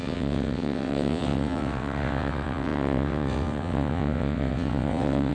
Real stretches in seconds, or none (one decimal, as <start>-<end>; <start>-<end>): none

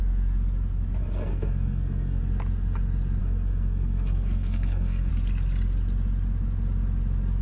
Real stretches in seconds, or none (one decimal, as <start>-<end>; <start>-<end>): 0.0-1.0; 2.2-3.2; 5.1-7.4

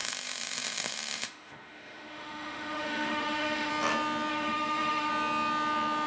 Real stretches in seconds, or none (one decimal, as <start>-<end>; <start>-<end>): 3.7-4.3; 5.1-6.1

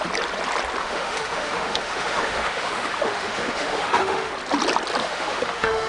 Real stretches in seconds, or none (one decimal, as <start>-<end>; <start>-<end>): 0.0-0.8; 4.3-5.0

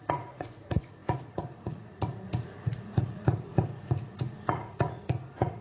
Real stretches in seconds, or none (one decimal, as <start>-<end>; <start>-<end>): none

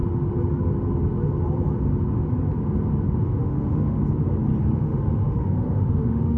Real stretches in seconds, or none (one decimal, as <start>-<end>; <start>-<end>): 0.0-3.4; 4.0-4.6

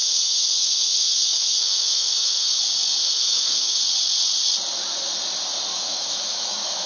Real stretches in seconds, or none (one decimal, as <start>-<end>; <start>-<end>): 2.6-3.0; 3.8-5.7

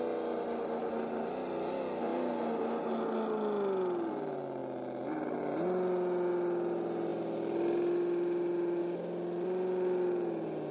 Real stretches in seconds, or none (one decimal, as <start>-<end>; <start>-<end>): 0.0-10.7